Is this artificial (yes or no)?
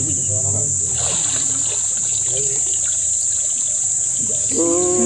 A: no